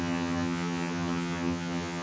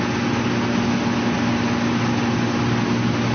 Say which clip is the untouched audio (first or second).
second